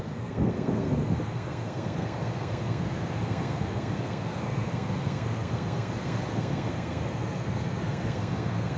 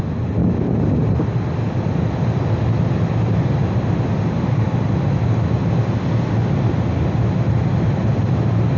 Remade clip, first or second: first